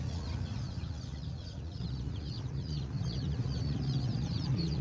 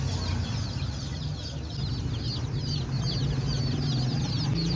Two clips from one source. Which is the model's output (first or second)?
first